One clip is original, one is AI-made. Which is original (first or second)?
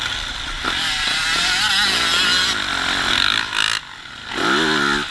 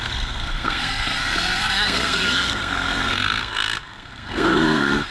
first